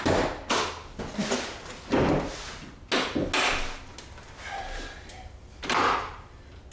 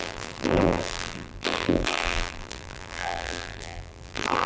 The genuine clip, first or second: first